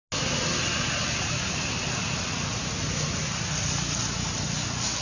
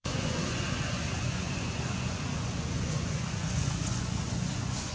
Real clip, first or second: first